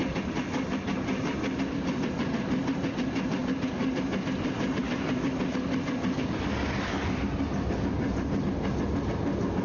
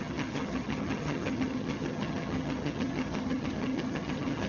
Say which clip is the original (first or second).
first